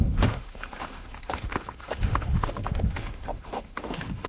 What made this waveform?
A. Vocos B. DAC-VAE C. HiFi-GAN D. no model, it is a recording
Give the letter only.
B